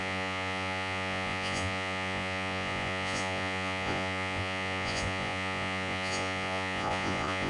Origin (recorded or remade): remade